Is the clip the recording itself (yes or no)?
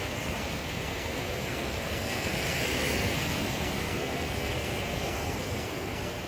no